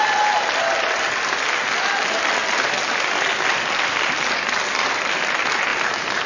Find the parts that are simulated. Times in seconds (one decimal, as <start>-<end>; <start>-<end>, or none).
none